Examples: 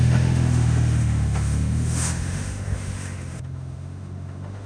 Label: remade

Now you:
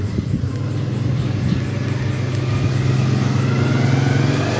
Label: recorded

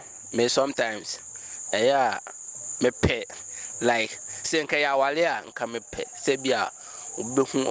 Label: recorded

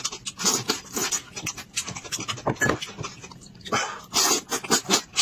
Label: recorded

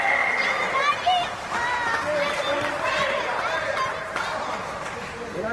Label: recorded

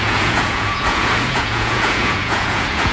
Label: remade